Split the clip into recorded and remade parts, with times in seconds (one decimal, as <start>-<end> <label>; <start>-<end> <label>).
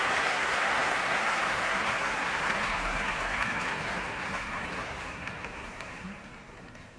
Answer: 0.0-7.0 remade